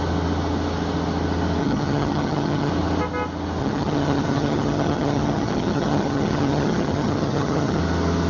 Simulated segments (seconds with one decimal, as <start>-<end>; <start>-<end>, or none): 1.6-2.7; 3.6-7.8